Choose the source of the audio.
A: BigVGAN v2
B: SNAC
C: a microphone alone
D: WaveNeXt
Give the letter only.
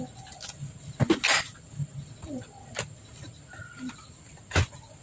C